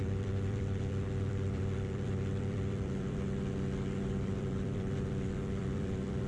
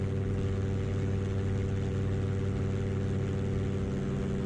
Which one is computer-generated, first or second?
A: first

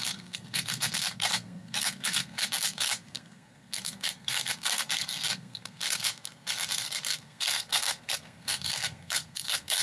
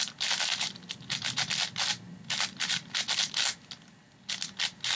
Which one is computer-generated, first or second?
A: first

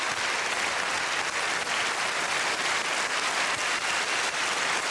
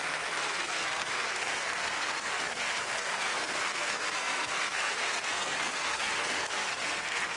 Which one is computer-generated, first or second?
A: second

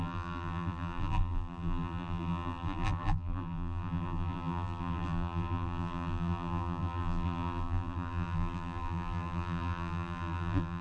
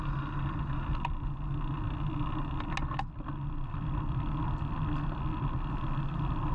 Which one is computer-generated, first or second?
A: first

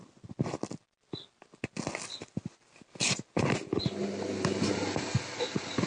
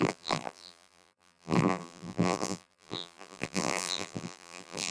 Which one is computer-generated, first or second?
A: second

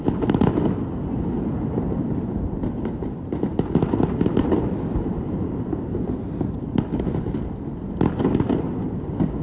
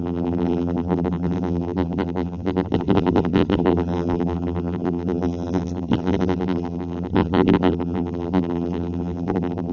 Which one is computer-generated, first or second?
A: second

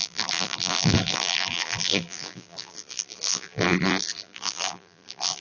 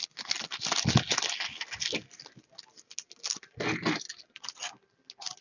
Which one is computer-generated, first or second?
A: first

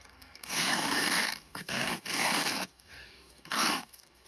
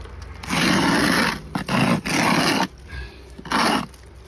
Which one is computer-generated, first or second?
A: first